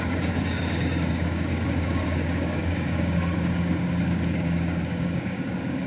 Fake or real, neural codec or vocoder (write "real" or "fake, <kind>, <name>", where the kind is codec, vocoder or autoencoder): fake, codec, DAC